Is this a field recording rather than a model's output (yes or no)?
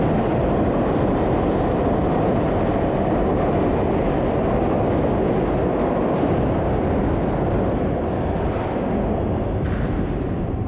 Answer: yes